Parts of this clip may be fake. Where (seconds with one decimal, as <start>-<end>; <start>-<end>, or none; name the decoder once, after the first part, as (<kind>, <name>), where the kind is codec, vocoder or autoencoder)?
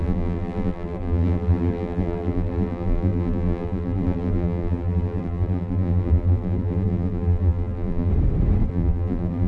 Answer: 0.0-8.1 (vocoder, BigVGAN v2); 8.7-9.5